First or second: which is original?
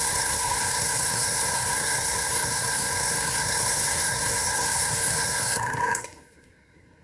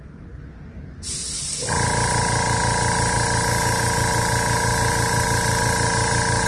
second